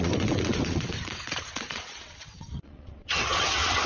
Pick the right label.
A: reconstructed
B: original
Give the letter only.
A